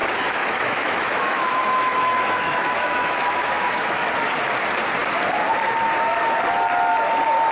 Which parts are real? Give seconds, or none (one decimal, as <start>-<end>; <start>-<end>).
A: 4.1-7.5